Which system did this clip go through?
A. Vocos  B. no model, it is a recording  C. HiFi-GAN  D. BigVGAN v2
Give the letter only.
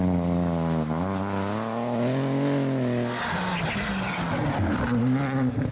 B